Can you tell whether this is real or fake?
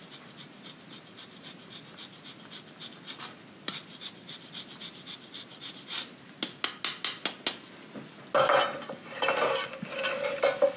real